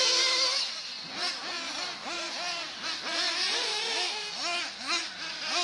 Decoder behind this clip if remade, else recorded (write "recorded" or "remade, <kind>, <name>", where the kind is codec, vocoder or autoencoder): recorded